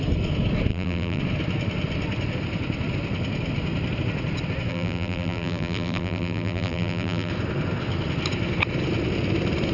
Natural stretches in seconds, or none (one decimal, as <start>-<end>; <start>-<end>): 0.0-0.7; 1.2-4.7; 7.3-9.7